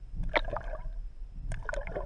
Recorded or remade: recorded